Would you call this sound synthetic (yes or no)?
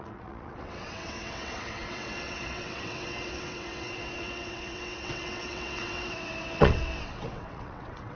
yes